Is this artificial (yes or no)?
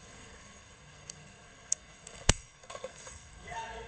yes